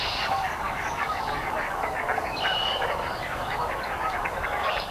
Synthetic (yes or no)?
yes